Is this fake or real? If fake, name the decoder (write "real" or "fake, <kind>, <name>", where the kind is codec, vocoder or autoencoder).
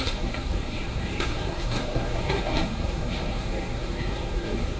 fake, codec, SNAC